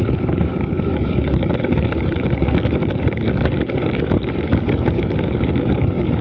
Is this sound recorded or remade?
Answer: remade